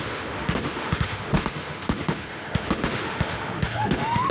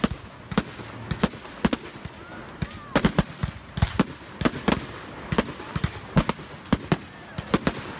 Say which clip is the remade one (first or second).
first